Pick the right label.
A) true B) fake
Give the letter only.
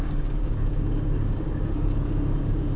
B